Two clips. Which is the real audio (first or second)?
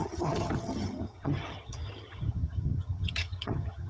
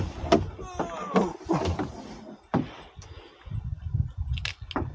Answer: second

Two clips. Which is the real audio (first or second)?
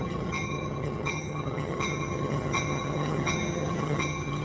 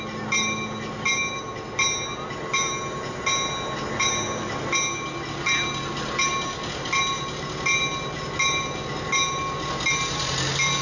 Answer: second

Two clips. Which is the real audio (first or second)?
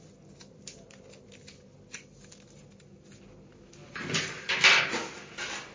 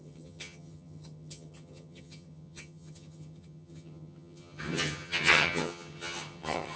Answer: first